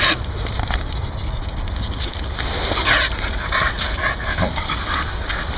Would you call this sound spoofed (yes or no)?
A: no